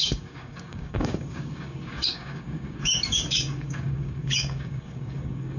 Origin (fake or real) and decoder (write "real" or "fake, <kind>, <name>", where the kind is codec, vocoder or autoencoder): fake, codec, DAC